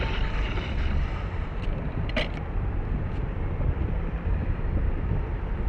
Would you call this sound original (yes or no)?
no